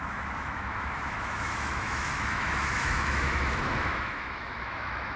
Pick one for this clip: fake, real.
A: fake